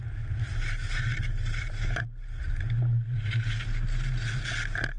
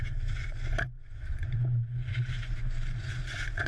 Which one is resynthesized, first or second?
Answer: second